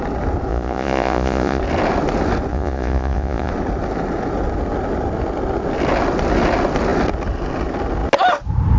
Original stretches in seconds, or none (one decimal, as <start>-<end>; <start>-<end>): 0.0-0.5; 1.6-2.5; 3.5-8.8